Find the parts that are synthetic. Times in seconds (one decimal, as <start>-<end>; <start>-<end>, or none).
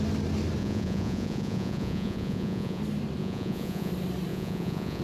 0.6-2.8; 3.2-3.9; 4.3-5.0